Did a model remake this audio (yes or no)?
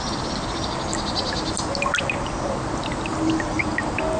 no